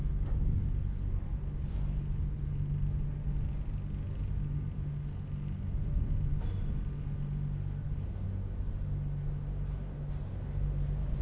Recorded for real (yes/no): yes